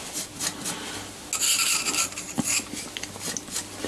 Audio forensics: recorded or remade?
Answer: recorded